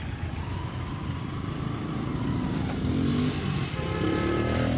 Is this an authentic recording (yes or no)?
no